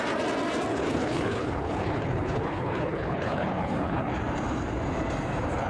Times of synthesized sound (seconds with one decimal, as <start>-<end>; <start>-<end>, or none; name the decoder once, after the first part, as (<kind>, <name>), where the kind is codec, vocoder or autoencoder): 0.7-4.1 (codec, HILCodec)